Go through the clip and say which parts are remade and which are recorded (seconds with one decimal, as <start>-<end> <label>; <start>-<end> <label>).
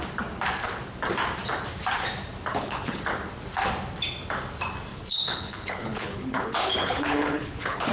0.0-2.5 recorded; 2.5-3.0 remade; 3.0-4.9 recorded; 4.9-7.9 remade